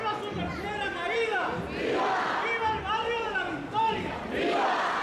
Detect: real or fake real